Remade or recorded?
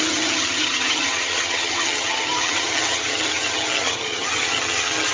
remade